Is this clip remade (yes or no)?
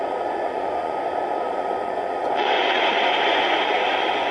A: yes